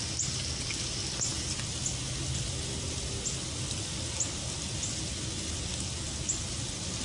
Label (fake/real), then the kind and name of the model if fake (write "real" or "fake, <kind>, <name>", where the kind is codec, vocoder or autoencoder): real